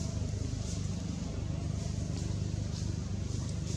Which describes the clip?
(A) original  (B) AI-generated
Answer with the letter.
A